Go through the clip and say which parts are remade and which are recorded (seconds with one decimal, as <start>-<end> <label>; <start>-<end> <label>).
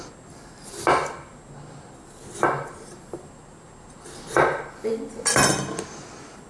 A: 0.0-6.5 recorded